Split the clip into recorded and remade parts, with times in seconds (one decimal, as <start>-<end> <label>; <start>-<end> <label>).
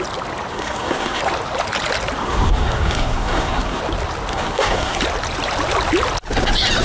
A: 0.0-0.5 recorded; 0.5-1.2 remade; 1.2-2.2 recorded; 2.2-3.8 remade; 3.8-4.3 recorded; 4.3-5.0 remade; 5.0-6.8 recorded